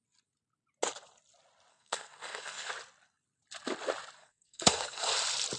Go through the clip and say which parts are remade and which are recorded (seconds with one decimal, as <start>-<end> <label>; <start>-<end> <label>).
0.0-1.7 recorded; 1.7-2.7 remade; 2.7-4.2 recorded; 4.2-5.1 remade; 5.1-5.6 recorded